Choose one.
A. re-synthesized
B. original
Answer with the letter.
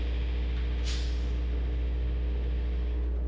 B